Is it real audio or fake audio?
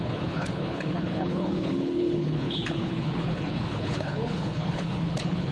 fake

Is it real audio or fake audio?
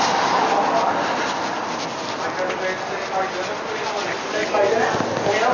real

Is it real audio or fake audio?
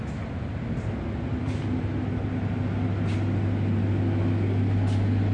real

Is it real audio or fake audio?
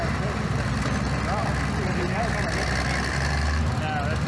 real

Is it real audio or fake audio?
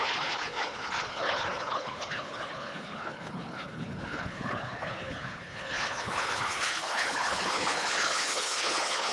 fake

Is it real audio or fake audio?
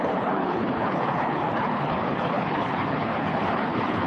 fake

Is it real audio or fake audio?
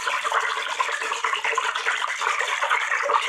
real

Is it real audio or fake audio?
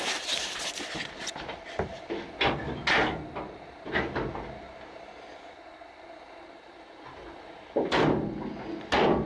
real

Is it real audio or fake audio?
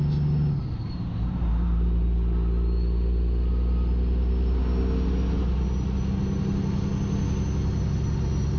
real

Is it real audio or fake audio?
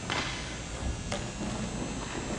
real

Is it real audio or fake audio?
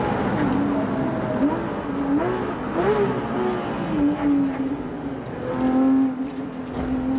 real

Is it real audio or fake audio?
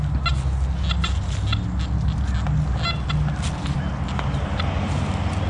real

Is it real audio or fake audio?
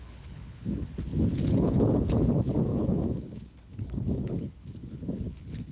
fake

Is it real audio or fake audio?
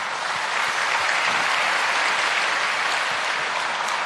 real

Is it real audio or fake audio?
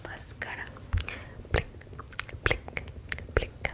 real